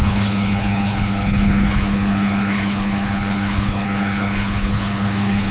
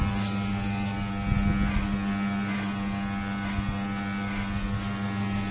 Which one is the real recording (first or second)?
second